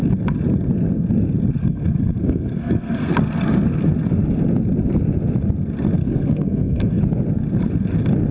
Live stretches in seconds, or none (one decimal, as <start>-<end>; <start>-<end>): 0.0-1.6; 3.1-6.0; 7.0-8.3